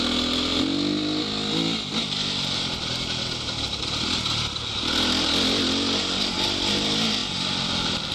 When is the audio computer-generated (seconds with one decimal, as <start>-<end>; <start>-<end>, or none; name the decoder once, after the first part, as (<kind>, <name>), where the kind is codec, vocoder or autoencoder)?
none